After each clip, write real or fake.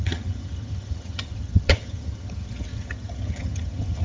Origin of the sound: fake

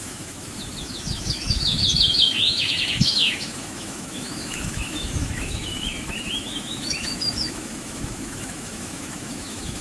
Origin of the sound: fake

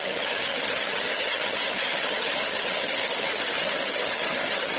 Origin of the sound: fake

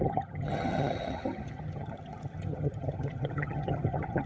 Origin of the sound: fake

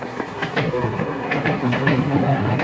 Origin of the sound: fake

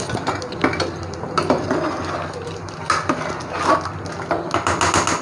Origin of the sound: real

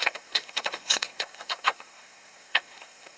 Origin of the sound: fake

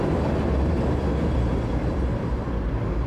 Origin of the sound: real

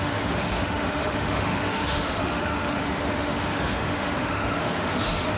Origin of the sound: fake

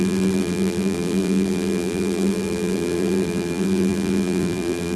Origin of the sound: fake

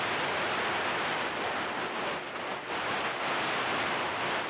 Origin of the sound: real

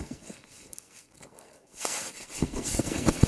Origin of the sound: fake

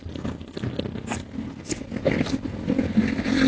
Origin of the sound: real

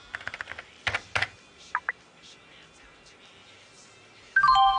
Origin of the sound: real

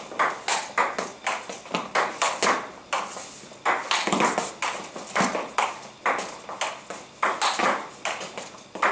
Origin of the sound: real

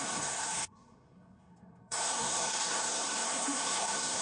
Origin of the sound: fake